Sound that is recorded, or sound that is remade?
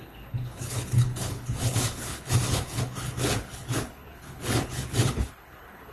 remade